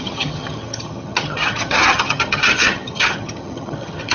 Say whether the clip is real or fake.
fake